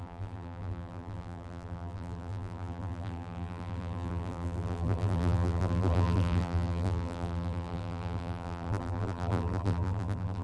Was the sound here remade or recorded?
remade